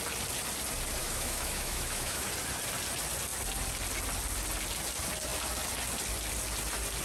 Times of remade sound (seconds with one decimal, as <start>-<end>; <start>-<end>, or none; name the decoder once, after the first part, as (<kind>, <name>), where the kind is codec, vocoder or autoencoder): 1.0-2.3 (autoencoder, DAC-VAE)